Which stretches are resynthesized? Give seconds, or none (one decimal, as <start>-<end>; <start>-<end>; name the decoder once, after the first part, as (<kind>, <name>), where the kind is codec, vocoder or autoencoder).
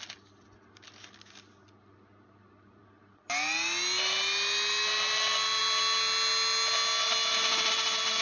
none